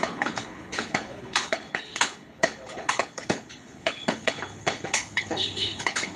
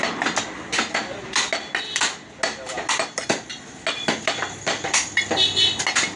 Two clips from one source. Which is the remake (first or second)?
first